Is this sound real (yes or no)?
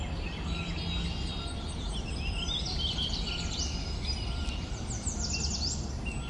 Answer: yes